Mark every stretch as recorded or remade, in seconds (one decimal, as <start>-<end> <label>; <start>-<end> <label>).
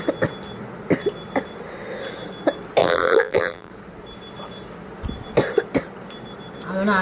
0.0-2.8 recorded; 2.8-3.7 remade; 3.7-7.0 recorded